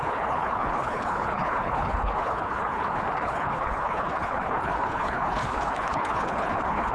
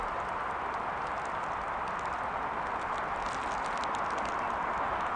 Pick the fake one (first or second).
first